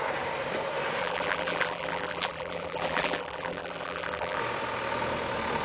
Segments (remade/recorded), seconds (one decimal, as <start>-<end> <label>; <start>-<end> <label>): 0.0-1.0 recorded; 1.0-4.4 remade; 4.4-5.6 recorded